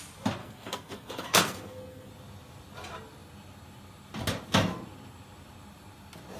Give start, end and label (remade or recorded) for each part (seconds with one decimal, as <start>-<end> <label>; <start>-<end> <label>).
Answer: 0.0-0.4 recorded; 0.4-2.1 remade; 2.1-6.4 recorded